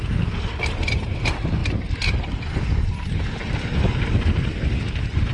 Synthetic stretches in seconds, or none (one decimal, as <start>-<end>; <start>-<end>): none